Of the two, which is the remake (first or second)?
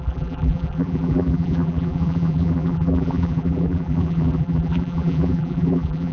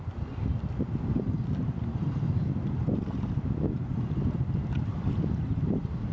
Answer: first